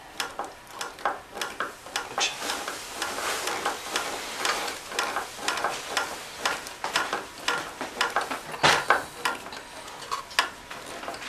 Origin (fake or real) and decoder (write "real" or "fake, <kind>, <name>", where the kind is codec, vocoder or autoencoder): real